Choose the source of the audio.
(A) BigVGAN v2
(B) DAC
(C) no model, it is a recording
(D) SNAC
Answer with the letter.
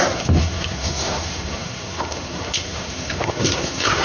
D